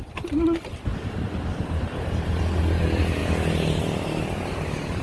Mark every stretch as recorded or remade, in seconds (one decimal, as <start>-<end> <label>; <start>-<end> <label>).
0.0-5.0 recorded